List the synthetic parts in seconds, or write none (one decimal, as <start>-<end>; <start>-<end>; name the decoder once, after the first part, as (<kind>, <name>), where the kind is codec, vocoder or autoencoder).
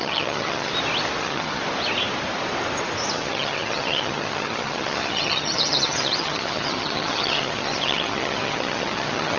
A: 0.0-0.7 (vocoder, HiFi-GAN); 1.2-1.6; 3.1-9.4